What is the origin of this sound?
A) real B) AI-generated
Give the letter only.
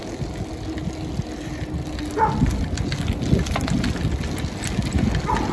A